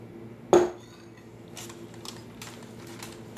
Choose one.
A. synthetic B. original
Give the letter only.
B